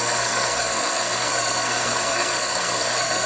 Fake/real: fake